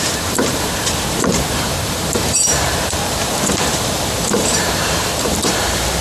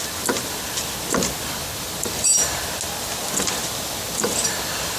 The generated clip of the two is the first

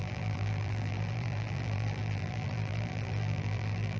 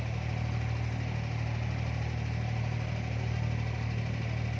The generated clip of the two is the first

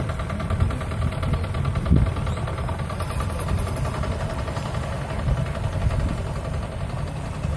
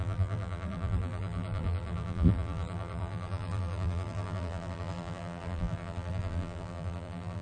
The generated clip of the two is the second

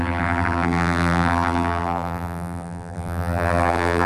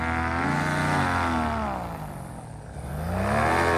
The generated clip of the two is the first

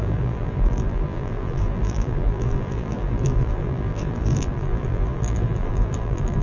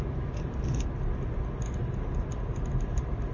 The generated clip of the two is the first